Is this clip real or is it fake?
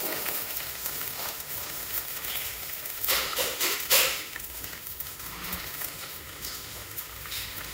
fake